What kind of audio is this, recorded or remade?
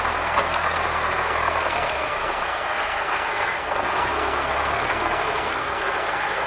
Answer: remade